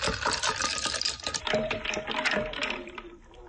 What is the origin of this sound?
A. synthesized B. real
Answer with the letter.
A